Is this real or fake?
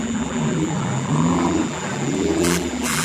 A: fake